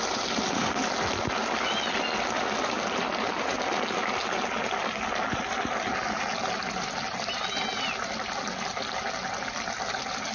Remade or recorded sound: recorded